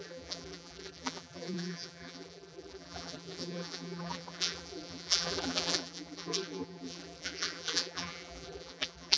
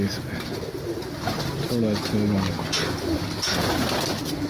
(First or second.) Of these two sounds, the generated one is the first